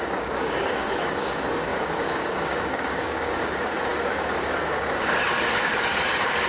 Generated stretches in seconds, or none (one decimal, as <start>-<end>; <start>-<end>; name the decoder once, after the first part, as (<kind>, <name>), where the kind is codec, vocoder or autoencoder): 0.0-6.5 (codec, DAC)